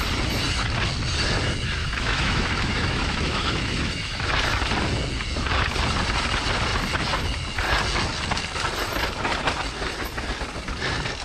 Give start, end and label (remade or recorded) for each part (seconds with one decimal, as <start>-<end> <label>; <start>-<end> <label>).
0.0-1.8 recorded; 1.8-4.2 remade; 4.2-11.2 recorded